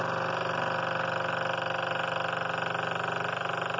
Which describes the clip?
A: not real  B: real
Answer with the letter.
B